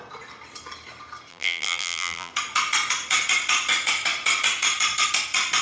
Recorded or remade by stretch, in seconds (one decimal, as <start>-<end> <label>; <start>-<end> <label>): 0.0-1.3 recorded; 1.3-2.3 remade; 2.3-5.6 recorded